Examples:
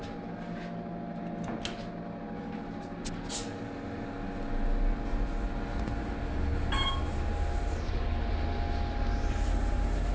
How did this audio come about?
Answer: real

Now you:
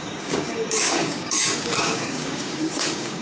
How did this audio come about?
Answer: fake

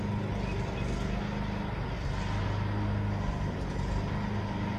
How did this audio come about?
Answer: real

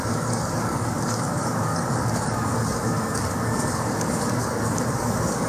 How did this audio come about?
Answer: fake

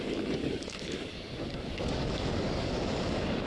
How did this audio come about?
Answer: fake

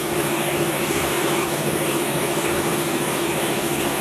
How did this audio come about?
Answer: fake